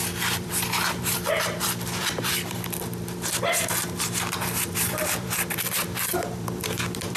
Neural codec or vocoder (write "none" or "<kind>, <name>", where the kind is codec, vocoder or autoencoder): vocoder, BigVGAN v2